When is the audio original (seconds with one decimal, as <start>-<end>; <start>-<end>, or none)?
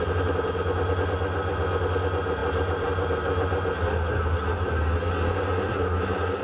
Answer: 0.0-6.4